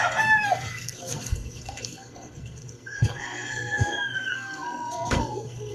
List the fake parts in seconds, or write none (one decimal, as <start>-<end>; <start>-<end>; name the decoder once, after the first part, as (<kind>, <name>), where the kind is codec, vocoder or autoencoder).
0.0-5.7 (codec, SNAC)